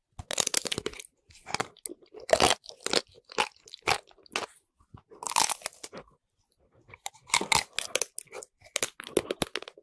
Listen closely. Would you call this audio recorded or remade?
recorded